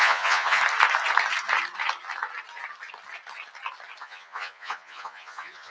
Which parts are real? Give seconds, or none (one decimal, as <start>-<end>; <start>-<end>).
0.6-4.0